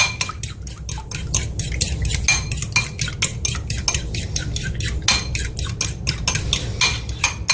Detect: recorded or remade recorded